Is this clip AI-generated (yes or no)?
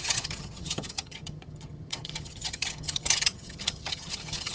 yes